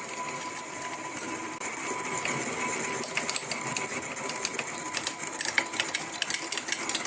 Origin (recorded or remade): recorded